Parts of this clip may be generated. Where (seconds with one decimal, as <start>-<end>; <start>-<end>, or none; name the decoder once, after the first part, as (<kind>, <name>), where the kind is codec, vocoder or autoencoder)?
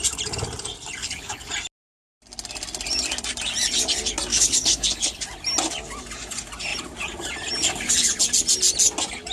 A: 1.0-1.5 (codec, HILCodec); 4.3-5.2